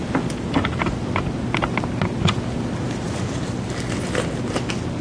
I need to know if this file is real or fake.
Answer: real